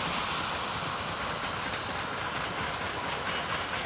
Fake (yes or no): no